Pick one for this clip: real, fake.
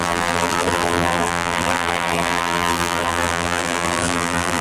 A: fake